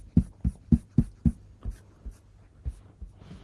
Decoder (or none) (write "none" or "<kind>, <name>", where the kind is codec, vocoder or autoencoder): none